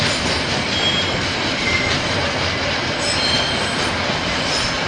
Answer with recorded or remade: recorded